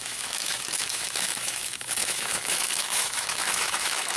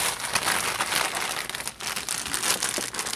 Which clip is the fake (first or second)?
first